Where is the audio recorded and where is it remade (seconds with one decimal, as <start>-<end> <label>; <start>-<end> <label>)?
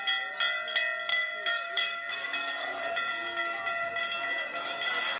0.0-1.1 recorded; 1.1-2.8 remade; 2.8-5.2 recorded